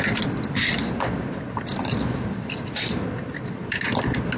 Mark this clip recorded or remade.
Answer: recorded